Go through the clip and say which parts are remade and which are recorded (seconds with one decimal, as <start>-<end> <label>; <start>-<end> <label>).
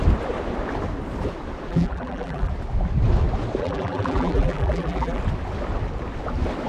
0.0-1.7 recorded; 1.7-2.5 remade; 2.5-3.6 recorded; 3.6-5.2 remade; 5.2-6.7 recorded